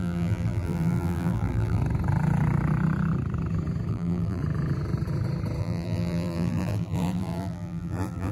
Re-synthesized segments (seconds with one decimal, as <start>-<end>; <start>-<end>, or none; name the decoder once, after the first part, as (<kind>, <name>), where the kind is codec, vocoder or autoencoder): 0.0-1.8 (vocoder, BigVGAN v2); 3.9-4.4; 5.6-8.3